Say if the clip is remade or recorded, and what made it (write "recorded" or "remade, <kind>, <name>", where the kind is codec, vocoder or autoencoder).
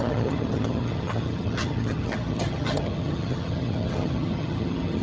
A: remade, vocoder, HiFi-GAN